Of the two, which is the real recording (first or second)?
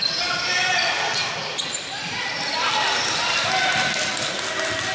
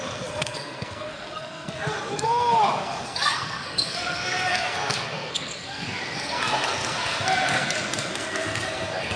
first